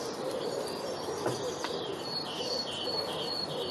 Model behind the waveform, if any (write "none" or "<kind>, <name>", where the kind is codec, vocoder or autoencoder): none